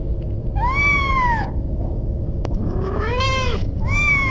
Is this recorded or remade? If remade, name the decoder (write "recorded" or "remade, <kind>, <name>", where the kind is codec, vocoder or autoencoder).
remade, autoencoder, DAC-VAE